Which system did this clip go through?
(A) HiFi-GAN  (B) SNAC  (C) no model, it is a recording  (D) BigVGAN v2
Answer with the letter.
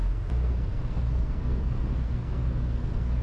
B